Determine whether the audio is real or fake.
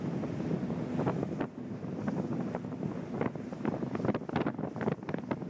real